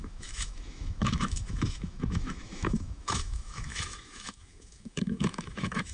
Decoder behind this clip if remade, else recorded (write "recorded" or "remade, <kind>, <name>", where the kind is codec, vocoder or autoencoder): remade, autoencoder, DAC-VAE